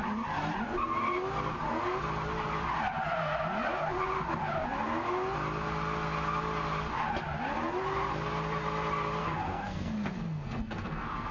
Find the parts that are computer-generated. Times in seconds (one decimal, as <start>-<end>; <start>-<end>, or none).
9.2-11.3